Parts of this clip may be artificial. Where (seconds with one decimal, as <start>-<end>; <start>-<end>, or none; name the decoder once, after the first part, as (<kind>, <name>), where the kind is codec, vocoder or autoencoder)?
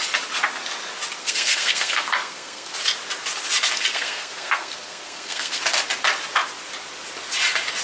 1.2-2.8 (codec, SNAC); 3.9-5.6